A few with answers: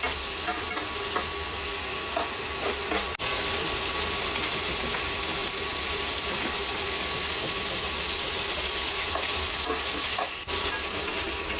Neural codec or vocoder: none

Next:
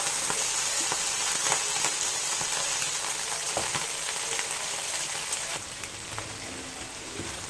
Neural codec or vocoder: none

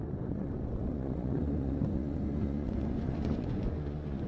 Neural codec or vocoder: vocoder, Vocos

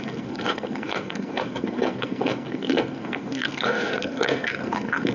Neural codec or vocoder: codec, SNAC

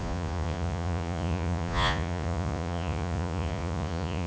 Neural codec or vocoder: vocoder, Vocos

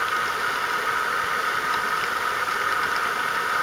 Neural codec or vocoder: none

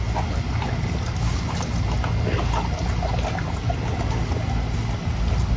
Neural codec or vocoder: none